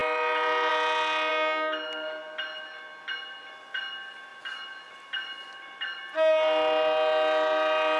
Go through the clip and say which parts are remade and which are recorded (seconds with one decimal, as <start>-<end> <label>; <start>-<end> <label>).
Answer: 0.0-8.0 recorded